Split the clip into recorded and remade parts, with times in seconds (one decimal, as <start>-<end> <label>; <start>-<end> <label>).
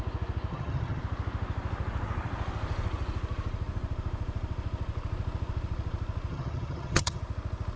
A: 0.0-0.5 recorded; 0.5-1.0 remade; 1.0-6.3 recorded; 6.3-7.2 remade; 7.2-7.8 recorded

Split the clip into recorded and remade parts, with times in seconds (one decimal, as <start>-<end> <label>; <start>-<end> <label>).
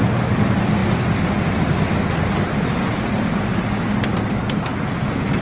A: 0.0-5.4 recorded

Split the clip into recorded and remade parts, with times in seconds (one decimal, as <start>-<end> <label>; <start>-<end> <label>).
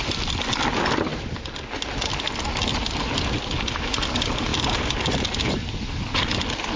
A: 0.0-6.8 recorded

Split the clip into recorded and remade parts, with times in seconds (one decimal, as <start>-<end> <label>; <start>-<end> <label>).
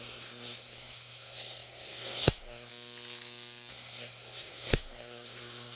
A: 0.0-2.7 remade; 2.7-3.7 recorded; 3.7-5.8 remade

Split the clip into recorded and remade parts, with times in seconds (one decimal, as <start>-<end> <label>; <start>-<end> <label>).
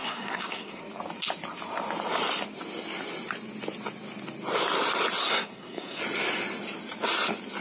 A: 0.0-0.8 remade; 0.8-5.2 recorded; 5.2-6.0 remade; 6.0-7.6 recorded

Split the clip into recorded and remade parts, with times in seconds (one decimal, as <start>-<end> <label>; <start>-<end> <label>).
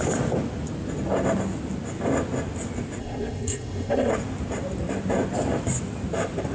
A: 0.0-3.0 recorded; 3.0-4.1 remade; 4.1-6.5 recorded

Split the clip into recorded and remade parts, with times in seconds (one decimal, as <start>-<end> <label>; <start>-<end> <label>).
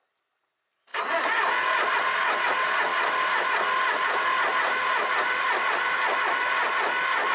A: 0.0-7.3 recorded